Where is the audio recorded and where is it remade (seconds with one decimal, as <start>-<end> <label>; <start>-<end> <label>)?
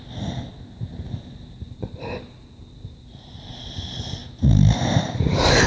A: 0.0-5.7 recorded